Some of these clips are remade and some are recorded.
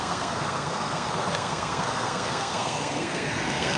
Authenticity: remade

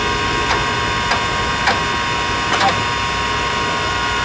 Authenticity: recorded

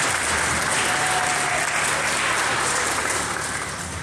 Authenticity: recorded